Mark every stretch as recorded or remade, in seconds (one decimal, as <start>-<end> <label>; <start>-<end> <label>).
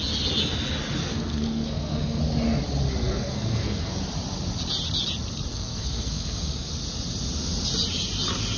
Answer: 0.0-1.0 recorded; 1.0-2.2 remade; 2.2-3.0 recorded; 3.0-4.0 remade; 4.0-5.5 recorded; 5.5-6.7 remade; 6.7-8.6 recorded